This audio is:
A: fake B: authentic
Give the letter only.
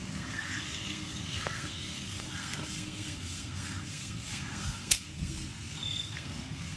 A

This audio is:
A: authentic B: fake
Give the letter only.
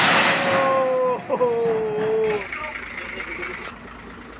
A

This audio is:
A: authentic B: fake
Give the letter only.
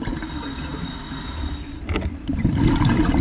A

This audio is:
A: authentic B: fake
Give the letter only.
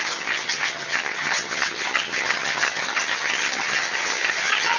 B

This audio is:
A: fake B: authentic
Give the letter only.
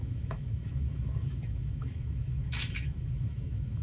A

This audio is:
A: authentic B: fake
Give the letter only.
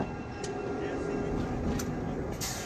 A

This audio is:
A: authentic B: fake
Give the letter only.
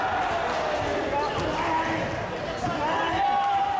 A